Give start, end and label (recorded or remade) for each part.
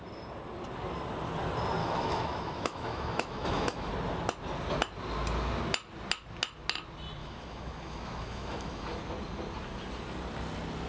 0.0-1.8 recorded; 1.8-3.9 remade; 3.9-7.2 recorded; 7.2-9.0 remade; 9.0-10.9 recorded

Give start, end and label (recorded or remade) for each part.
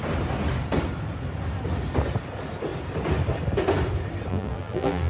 0.0-4.3 recorded; 4.3-5.1 remade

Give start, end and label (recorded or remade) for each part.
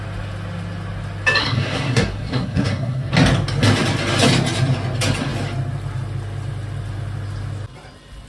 0.0-1.4 recorded; 1.4-3.1 remade; 3.1-8.3 recorded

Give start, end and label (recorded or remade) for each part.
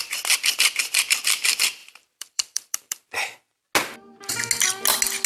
0.0-1.8 recorded; 1.8-3.1 remade; 3.1-5.3 recorded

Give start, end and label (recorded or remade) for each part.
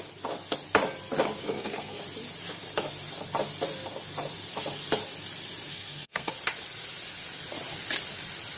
0.0-1.4 recorded; 1.4-2.0 remade; 2.0-5.7 recorded; 5.7-6.3 remade; 6.3-8.6 recorded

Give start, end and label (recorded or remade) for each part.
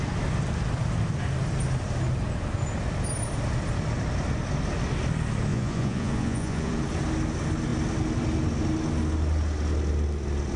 0.0-5.5 recorded; 5.5-6.7 remade; 6.7-10.6 recorded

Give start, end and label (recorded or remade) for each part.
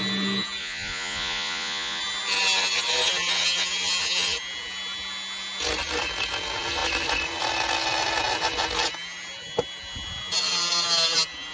0.0-0.6 recorded; 0.6-2.0 remade; 2.0-11.5 recorded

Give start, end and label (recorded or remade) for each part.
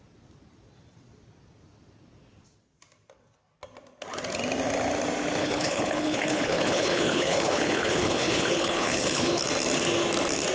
0.0-5.4 recorded; 5.4-9.4 remade; 9.4-10.5 recorded